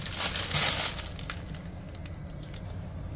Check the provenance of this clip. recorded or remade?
recorded